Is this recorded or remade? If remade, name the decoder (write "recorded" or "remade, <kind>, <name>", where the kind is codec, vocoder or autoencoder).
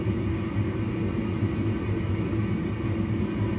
recorded